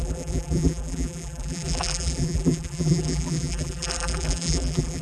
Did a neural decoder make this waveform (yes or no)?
yes